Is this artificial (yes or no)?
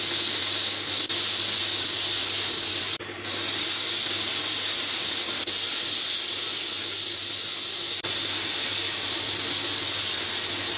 no